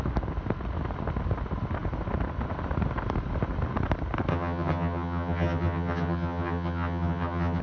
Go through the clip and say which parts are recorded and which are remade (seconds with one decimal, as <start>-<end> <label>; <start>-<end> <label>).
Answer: 0.0-4.3 recorded; 4.3-7.6 remade